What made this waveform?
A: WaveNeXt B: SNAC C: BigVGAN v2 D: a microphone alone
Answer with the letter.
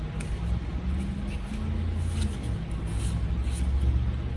D